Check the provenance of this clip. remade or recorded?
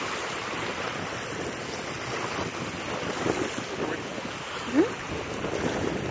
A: recorded